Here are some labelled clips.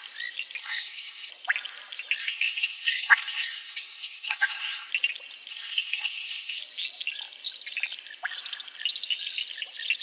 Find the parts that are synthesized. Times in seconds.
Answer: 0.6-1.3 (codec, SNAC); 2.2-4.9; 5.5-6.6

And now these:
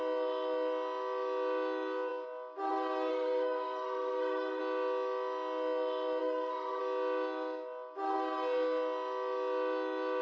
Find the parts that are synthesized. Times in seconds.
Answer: 3.1-4.6 (codec, SNAC); 6.2-6.8

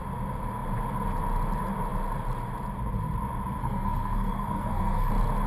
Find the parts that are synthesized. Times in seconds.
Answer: 3.6-5.1 (codec, SNAC)

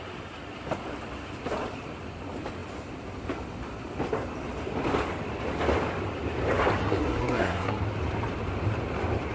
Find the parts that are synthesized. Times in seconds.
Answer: 6.8-7.8 (codec, SNAC)